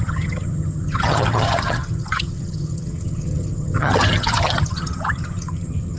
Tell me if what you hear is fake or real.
fake